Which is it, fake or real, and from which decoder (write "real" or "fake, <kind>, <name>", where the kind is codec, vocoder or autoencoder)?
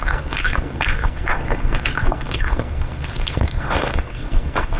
fake, codec, SNAC